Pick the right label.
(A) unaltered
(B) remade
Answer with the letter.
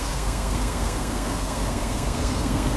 B